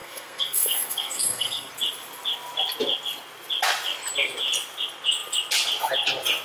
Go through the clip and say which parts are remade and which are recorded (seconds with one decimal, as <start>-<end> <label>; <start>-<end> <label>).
0.0-1.7 remade; 1.7-6.4 recorded